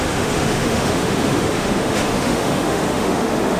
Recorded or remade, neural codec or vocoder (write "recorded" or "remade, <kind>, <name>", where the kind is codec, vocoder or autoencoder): remade, autoencoder, DAC-VAE